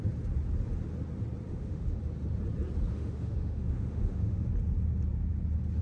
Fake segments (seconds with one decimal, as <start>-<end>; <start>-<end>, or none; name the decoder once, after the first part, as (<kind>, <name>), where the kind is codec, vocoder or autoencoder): 1.5-2.0 (autoencoder, DAC-VAE); 2.9-4.5

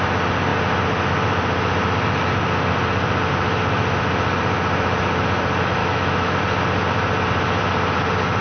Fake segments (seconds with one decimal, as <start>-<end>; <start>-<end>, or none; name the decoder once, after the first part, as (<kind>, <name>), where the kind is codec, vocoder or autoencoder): 5.8-6.4 (autoencoder, DAC-VAE)

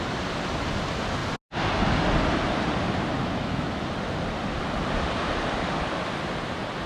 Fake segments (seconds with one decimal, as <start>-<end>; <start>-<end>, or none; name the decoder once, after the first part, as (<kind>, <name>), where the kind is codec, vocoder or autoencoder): 3.2-3.8 (autoencoder, DAC-VAE)

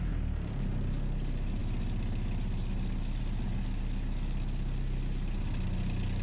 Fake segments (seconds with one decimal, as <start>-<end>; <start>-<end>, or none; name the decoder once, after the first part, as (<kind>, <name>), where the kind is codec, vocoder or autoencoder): none

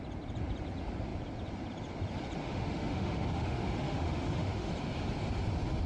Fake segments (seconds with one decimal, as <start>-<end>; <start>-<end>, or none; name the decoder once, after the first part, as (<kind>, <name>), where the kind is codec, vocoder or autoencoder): 2.4-4.7 (autoencoder, DAC-VAE)

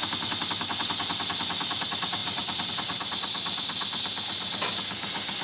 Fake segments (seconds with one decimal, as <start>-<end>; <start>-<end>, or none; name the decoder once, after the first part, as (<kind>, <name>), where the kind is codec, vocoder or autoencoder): none

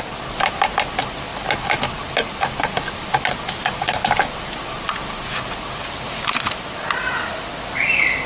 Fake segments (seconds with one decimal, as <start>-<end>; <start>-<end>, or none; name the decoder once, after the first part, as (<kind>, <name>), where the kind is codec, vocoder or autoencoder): none